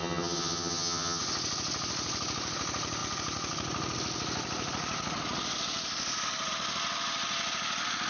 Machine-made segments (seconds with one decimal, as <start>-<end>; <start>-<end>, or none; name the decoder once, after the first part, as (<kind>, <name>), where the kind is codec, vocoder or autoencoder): 0.0-1.2 (vocoder, HiFi-GAN)